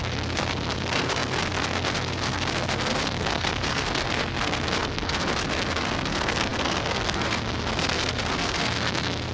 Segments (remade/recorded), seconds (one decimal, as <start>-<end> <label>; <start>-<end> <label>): 0.0-9.3 remade

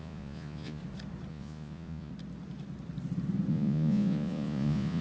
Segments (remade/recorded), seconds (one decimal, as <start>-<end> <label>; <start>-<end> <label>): 0.0-0.8 remade; 0.8-1.3 recorded; 1.3-2.1 remade; 2.1-3.5 recorded; 3.5-5.0 remade